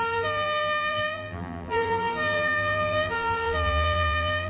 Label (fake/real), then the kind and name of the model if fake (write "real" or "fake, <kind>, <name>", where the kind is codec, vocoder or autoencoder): fake, vocoder, BigVGAN v2